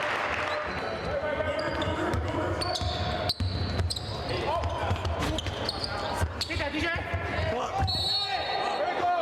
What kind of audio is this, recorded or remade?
recorded